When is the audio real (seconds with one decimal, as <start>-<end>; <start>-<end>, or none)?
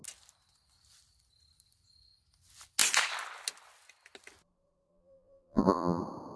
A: 0.0-4.9; 6.0-6.4